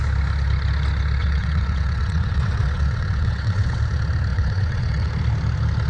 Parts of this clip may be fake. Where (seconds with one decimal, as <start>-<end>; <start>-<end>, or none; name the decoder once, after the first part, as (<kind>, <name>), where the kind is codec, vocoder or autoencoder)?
1.2-3.8 (vocoder, WaveNeXt); 4.3-5.1